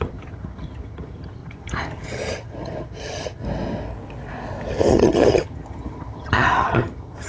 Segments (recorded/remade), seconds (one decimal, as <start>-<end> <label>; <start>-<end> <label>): 0.0-3.4 remade; 3.4-4.9 recorded; 4.9-7.3 remade